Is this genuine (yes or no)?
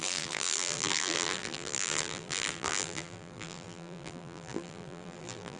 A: no